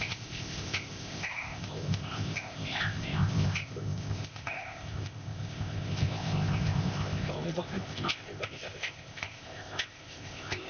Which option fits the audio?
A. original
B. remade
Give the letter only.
B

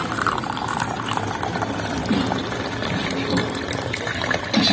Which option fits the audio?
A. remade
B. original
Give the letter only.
B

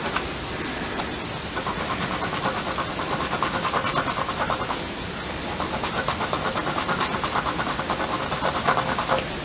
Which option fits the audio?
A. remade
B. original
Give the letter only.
B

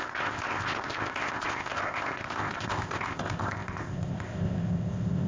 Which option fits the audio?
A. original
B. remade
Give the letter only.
B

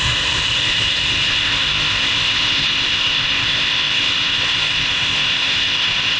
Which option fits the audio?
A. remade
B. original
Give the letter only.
A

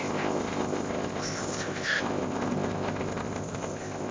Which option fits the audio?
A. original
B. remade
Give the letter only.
B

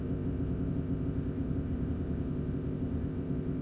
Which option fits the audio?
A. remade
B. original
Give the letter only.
A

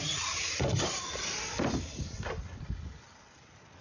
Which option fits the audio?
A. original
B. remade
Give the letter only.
A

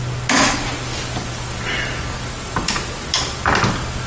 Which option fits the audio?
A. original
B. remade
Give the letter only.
A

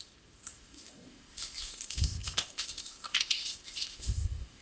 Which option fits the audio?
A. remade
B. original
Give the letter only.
A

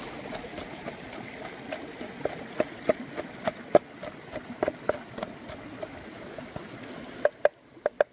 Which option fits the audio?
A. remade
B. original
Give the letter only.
B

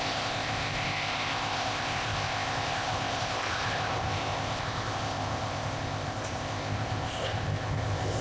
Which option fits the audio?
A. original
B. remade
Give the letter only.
B